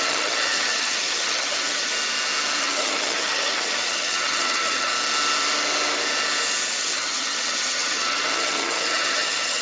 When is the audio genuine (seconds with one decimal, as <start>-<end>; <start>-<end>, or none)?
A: 1.9-2.6; 4.9-6.8